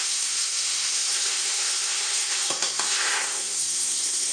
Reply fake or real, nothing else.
fake